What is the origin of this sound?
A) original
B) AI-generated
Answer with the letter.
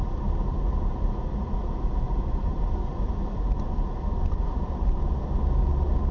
A